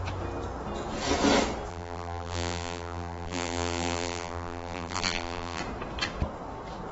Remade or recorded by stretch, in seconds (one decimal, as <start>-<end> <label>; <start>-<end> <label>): 0.0-1.7 recorded; 1.7-5.6 remade; 5.6-6.9 recorded